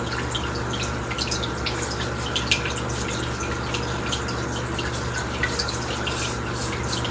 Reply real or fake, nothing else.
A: real